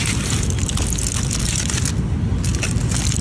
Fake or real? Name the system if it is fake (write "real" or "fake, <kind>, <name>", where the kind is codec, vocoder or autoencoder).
real